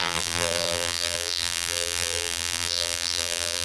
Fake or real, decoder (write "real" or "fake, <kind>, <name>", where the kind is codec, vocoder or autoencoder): fake, vocoder, BigVGAN v2